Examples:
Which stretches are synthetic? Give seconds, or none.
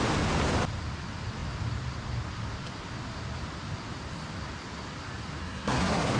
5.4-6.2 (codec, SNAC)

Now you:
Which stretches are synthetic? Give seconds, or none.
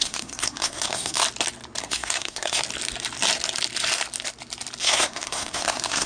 0.0-1.2 (codec, SNAC); 1.8-2.6; 4.8-6.1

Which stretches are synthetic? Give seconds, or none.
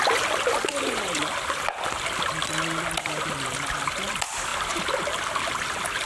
none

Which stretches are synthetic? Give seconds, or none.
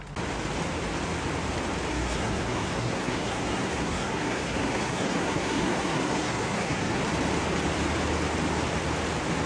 1.9-7.0 (codec, SNAC)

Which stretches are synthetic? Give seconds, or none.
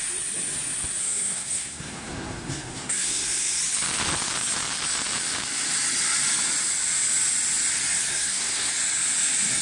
1.0-3.6 (codec, SNAC); 8.1-8.7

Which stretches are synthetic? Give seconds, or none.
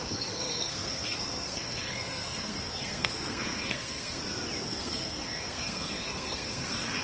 0.0-4.2 (codec, SNAC); 4.7-7.0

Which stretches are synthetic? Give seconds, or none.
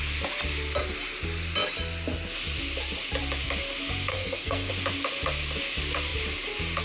4.1-4.7 (codec, SNAC)